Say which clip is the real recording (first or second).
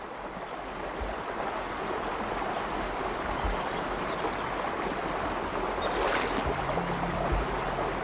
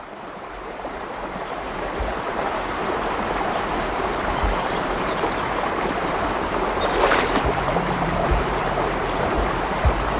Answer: first